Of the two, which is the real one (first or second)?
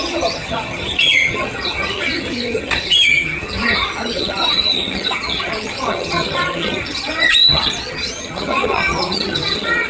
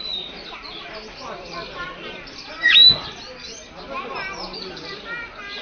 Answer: second